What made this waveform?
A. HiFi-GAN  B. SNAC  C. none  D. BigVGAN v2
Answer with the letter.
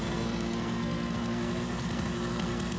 B